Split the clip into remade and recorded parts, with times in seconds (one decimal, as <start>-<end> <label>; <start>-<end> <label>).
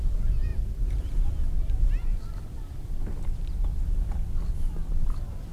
0.0-5.5 recorded